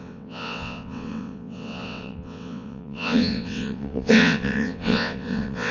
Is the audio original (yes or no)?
no